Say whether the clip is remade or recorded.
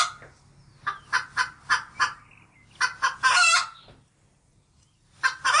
recorded